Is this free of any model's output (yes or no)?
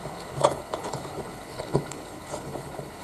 no